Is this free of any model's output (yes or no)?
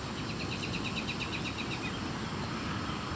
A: yes